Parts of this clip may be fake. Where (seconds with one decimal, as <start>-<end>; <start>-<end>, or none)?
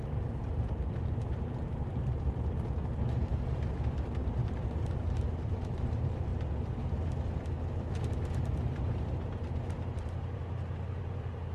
0.0-3.3; 3.9-6.3; 9.0-11.5